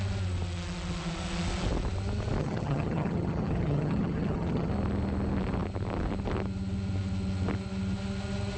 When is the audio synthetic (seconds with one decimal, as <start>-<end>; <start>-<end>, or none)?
2.4-4.7